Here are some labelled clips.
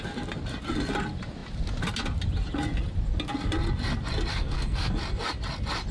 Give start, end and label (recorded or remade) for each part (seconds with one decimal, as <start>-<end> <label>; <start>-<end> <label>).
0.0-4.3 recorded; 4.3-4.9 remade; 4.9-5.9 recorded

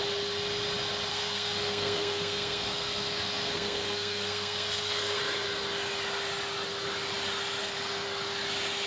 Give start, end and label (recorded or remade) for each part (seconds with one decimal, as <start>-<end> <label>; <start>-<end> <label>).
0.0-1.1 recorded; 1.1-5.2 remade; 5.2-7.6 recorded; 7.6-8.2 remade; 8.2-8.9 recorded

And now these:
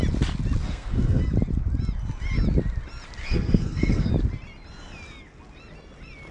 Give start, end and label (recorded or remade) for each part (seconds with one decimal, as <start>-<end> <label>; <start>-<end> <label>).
0.0-0.6 recorded; 0.6-1.2 remade; 1.2-3.2 recorded; 3.2-4.1 remade; 4.1-6.3 recorded

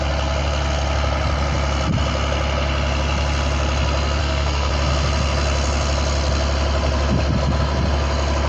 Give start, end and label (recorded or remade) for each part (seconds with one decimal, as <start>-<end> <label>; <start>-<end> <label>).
0.0-4.2 recorded; 4.2-4.7 remade; 4.7-8.5 recorded